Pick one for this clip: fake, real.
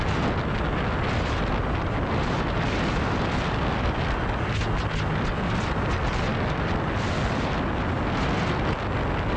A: real